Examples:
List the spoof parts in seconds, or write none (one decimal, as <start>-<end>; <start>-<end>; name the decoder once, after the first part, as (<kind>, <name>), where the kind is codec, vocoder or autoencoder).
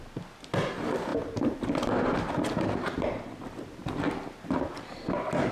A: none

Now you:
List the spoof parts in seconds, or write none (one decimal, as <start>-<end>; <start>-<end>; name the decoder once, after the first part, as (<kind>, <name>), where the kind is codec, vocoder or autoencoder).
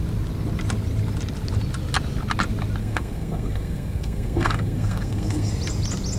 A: 2.8-5.5 (codec, SNAC)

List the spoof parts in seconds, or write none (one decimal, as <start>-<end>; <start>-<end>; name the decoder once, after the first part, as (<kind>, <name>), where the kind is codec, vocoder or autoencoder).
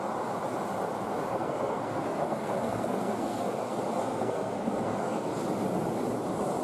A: 1.3-5.3 (codec, SNAC)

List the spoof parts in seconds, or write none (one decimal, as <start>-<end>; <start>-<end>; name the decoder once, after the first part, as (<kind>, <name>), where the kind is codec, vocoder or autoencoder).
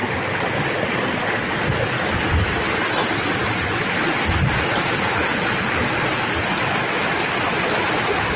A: 0.0-2.8 (vocoder, BigVGAN v2); 5.3-6.4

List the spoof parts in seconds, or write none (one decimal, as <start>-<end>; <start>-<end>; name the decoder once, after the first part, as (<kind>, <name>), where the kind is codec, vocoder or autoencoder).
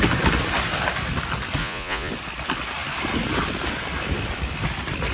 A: 1.6-2.1 (vocoder, Vocos)